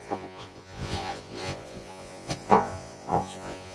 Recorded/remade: remade